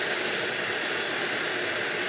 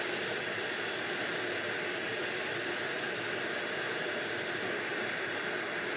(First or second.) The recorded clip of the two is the second